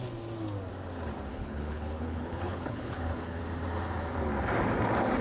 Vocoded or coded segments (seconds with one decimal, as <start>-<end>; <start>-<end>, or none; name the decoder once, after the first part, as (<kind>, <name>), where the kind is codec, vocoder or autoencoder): 1.3-3.4 (codec, HILCodec)